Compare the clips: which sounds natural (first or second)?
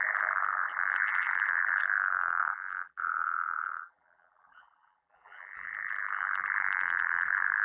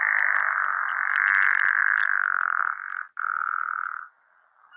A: second